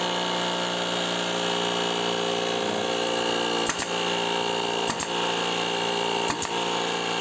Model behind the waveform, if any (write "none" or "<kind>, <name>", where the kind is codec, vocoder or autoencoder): none